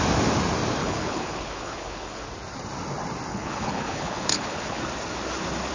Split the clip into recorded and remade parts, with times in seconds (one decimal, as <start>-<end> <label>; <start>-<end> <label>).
0.0-0.8 recorded; 0.8-2.2 remade; 2.2-3.3 recorded; 3.3-4.8 remade; 4.8-5.7 recorded